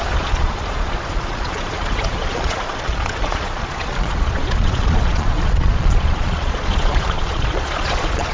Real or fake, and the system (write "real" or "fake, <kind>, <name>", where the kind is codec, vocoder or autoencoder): fake, vocoder, Vocos